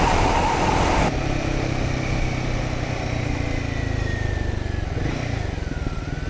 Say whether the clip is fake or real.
real